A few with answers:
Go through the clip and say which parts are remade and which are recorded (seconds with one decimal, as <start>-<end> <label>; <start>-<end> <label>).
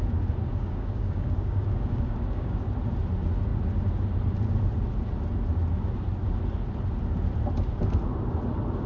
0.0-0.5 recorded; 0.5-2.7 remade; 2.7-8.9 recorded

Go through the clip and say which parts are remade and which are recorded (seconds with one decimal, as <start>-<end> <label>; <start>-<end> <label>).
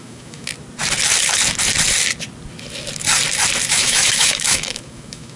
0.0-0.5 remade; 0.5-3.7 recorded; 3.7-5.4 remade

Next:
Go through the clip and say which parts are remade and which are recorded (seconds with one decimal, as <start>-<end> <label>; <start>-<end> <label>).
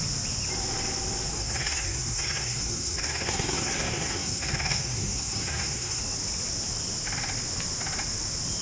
0.0-1.3 recorded; 1.3-6.0 remade; 6.0-8.6 recorded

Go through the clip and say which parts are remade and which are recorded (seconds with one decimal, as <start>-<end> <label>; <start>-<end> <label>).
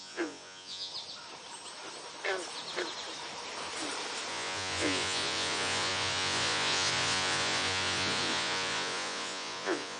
0.0-0.9 remade; 0.9-4.3 recorded; 4.3-10.0 remade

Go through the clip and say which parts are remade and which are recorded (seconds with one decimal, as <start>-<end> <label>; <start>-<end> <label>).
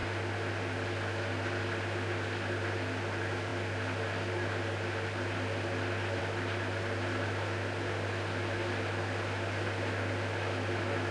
0.0-11.1 recorded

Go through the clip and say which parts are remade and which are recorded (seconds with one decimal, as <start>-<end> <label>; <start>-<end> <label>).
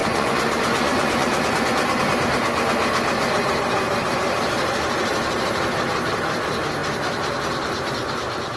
0.0-2.0 remade; 2.0-8.6 recorded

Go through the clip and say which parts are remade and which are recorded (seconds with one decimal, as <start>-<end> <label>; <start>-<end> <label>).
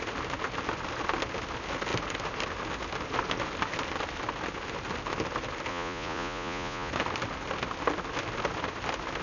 0.0-5.7 recorded; 5.7-6.9 remade; 6.9-9.2 recorded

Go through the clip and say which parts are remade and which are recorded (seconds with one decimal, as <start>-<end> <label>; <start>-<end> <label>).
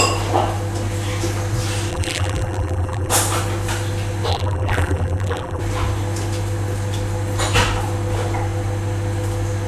0.0-1.9 recorded; 1.9-3.1 remade; 3.1-4.3 recorded; 4.3-5.6 remade; 5.6-9.7 recorded